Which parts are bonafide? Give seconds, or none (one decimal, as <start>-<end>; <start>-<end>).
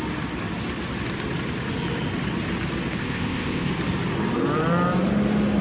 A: 0.0-3.0; 3.7-5.6